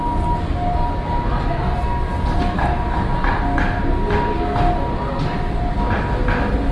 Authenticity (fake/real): real